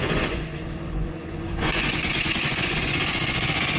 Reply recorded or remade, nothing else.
remade